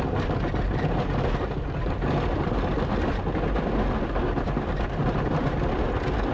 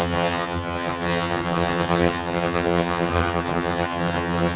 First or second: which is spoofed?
second